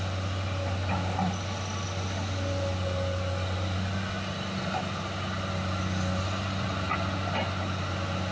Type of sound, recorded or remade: recorded